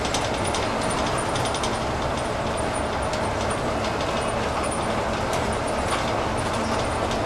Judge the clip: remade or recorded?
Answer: recorded